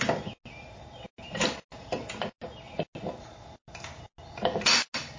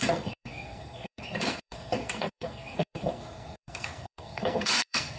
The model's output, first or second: second